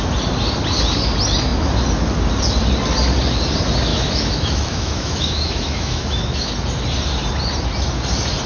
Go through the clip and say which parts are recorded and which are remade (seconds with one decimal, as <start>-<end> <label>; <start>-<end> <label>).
0.0-3.9 recorded; 3.9-6.5 remade; 6.5-8.5 recorded